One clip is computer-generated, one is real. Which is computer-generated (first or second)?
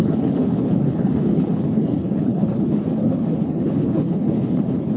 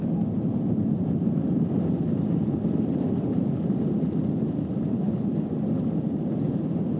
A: first